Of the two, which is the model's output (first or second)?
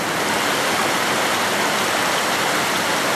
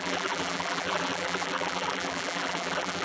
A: second